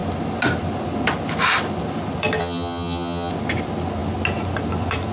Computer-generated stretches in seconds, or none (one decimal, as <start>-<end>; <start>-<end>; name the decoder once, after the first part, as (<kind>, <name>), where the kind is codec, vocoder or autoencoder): 2.4-3.3 (vocoder, HiFi-GAN)